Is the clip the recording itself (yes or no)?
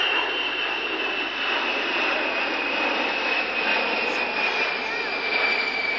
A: yes